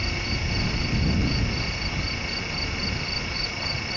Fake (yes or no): no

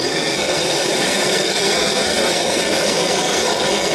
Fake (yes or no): yes